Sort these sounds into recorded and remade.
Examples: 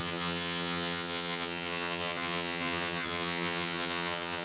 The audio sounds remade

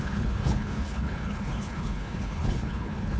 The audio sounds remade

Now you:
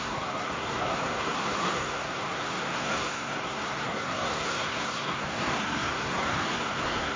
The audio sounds remade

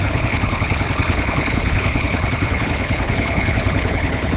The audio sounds remade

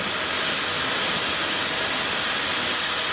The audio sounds recorded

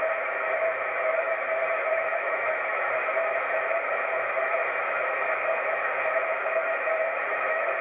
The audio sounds remade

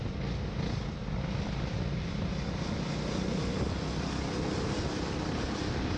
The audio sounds recorded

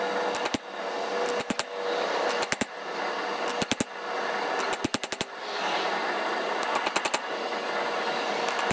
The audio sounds recorded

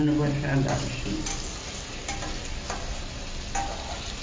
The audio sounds recorded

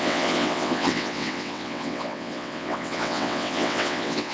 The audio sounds remade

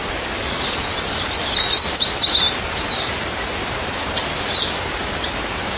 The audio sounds recorded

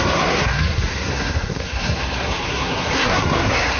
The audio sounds remade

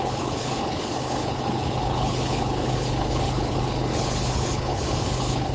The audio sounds remade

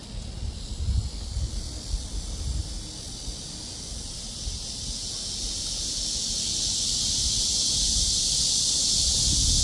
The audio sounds recorded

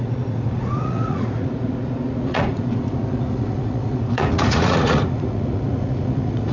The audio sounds remade